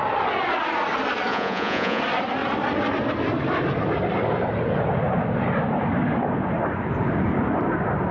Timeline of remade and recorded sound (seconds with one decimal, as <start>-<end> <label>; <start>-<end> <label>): 0.0-1.3 recorded; 1.3-2.0 remade; 2.0-8.1 recorded